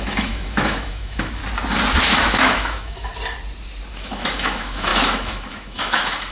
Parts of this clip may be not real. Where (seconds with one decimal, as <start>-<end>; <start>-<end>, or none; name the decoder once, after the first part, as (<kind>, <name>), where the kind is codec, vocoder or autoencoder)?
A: 0.0-1.4 (autoencoder, DAC-VAE); 2.0-3.1; 3.9-6.3